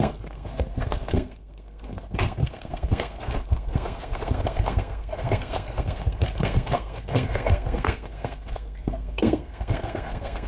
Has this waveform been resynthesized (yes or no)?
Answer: yes